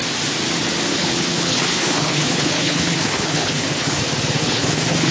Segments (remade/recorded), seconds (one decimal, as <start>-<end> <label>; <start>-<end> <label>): 0.0-0.9 recorded; 0.9-4.0 remade; 4.0-4.4 recorded; 4.4-5.1 remade